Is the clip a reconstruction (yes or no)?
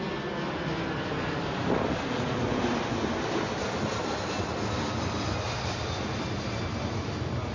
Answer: no